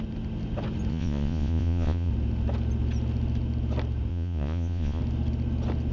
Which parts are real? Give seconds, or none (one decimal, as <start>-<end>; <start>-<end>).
0.0-0.9; 2.1-4.1; 5.0-5.9